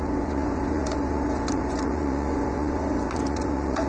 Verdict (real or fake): fake